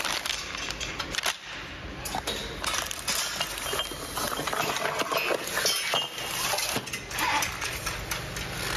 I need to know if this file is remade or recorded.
recorded